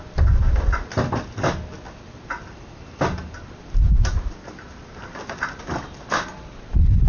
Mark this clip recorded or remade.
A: recorded